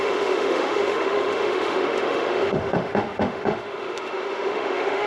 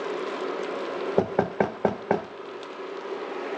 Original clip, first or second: second